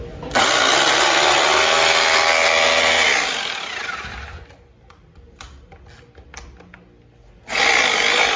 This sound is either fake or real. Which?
real